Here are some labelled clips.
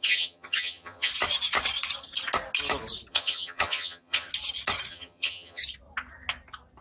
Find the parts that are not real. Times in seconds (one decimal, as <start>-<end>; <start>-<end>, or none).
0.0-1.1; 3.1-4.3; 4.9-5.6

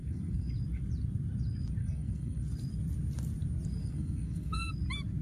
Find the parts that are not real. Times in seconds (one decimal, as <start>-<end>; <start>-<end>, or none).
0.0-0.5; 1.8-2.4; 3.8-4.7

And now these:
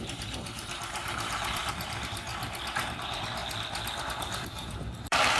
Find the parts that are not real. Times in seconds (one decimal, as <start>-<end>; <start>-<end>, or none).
0.0-2.3; 2.8-3.4; 4.0-5.4